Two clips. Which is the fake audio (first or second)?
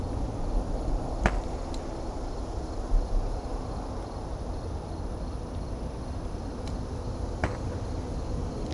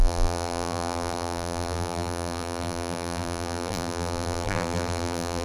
second